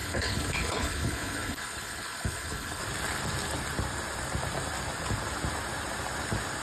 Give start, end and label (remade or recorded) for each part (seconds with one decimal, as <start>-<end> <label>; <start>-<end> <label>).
0.0-2.8 remade; 2.8-6.6 recorded